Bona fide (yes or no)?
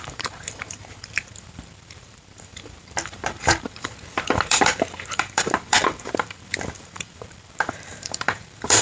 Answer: no